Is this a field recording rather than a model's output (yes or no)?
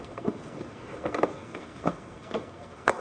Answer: no